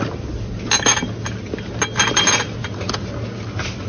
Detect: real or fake real